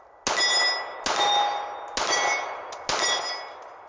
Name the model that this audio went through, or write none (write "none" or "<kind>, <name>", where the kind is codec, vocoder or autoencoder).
none